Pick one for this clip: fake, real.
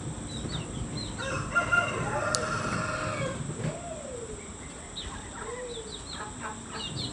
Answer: real